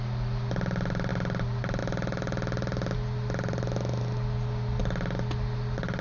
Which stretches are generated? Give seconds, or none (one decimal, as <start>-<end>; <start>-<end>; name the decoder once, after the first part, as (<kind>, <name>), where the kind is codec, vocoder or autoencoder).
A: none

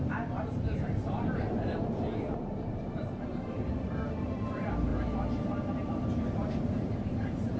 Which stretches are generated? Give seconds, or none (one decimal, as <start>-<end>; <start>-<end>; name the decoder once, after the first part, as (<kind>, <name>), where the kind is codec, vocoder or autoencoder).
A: 0.0-4.9 (vocoder, BigVGAN v2); 6.6-7.6

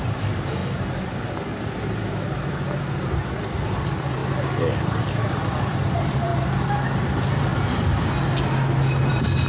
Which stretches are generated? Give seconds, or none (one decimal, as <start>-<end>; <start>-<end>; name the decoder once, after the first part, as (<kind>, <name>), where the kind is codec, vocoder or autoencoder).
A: 0.0-0.6 (vocoder, BigVGAN v2); 3.4-4.2; 5.0-6.3; 6.9-7.5; 9.1-9.5